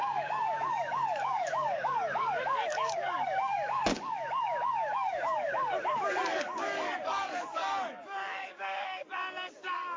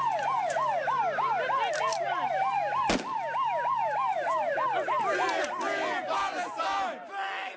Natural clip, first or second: second